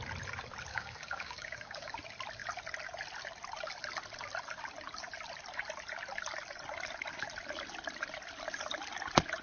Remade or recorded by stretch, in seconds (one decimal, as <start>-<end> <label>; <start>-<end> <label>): 0.0-0.7 recorded; 0.7-1.9 remade; 1.9-9.4 recorded